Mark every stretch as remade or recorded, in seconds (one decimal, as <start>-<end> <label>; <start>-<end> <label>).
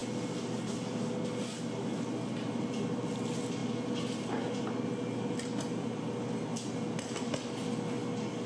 0.0-8.5 recorded